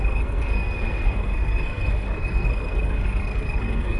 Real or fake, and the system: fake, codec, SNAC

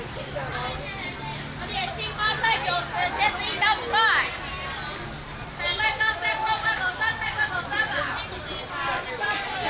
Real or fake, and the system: real